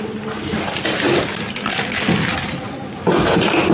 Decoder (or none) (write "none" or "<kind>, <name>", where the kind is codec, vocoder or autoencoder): none